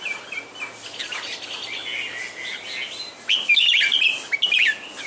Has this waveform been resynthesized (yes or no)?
no